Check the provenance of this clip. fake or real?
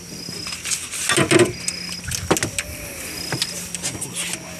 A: real